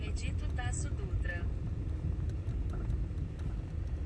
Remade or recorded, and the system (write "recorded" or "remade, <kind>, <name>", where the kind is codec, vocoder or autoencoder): recorded